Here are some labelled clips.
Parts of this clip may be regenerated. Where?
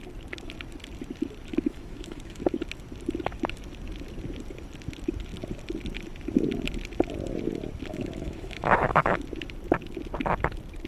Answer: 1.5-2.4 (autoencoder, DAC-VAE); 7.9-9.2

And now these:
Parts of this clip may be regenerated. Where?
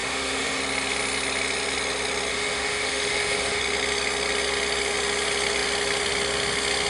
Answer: 0.0-0.6 (autoencoder, DAC-VAE); 2.3-3.6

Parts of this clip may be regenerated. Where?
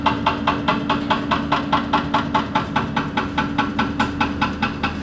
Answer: none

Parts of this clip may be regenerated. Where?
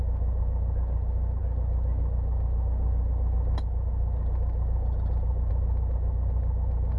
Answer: none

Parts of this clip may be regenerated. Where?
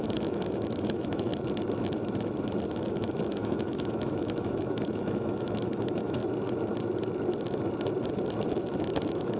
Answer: 0.0-1.3 (autoencoder, DAC-VAE); 2.7-6.2; 9.0-9.4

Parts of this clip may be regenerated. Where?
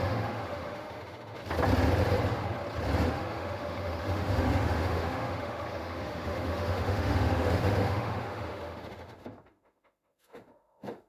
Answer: 0.0-1.4 (autoencoder, DAC-VAE); 3.1-11.1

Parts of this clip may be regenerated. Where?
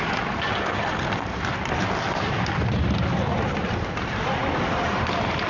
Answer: none